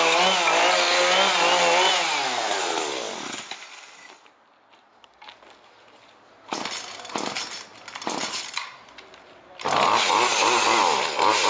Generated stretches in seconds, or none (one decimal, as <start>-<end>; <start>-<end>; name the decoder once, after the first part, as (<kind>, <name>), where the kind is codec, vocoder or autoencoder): 8.2-8.8 (vocoder, BigVGAN v2)